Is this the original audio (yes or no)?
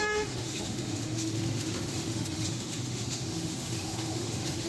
no